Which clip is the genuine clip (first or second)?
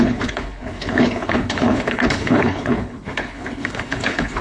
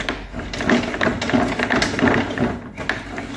second